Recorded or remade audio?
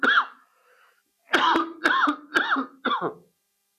recorded